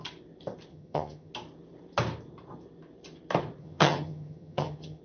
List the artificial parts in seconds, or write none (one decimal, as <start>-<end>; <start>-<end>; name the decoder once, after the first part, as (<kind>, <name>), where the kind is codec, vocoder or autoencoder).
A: 0.7-1.3 (vocoder, HiFi-GAN); 3.6-5.0